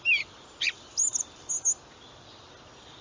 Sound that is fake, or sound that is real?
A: real